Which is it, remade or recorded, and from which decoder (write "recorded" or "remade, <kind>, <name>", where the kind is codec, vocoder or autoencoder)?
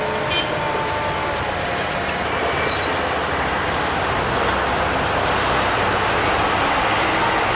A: recorded